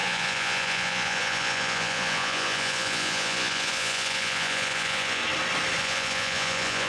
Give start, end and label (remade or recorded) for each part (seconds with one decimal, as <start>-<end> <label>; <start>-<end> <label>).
0.0-5.2 remade; 5.2-5.8 recorded; 5.8-6.9 remade